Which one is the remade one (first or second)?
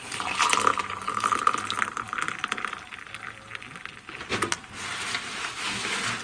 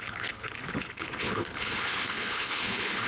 second